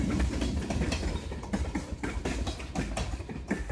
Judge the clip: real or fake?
real